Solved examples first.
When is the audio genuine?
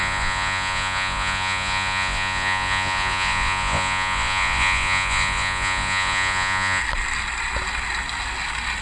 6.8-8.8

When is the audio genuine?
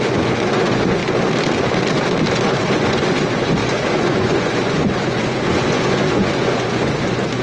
1.0-2.3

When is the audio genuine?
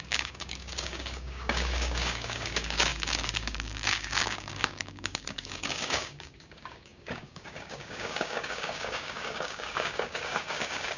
none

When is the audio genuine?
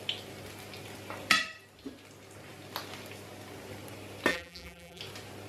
0.0-4.3; 5.0-5.5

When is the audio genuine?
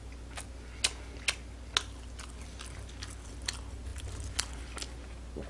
0.0-5.5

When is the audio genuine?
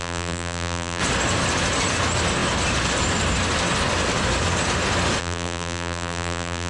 1.0-5.2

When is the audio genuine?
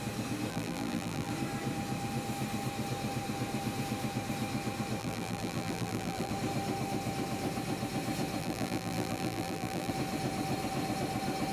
0.0-0.5; 1.3-5.0; 6.3-8.4; 9.9-11.5